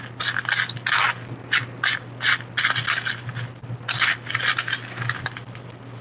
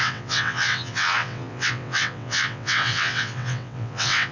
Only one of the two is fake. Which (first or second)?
second